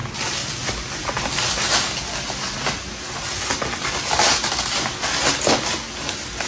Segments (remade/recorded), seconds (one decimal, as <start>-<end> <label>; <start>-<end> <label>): 0.0-6.5 recorded